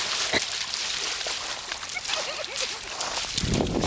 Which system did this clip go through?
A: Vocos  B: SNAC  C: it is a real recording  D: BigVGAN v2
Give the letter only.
C